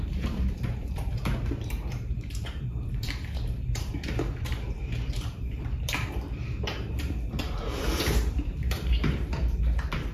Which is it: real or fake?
fake